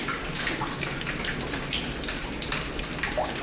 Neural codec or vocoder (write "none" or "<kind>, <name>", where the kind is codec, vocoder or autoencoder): none